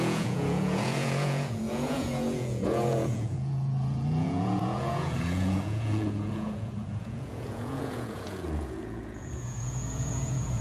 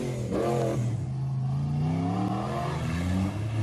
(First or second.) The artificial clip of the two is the first